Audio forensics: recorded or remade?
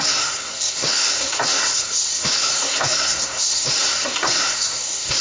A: remade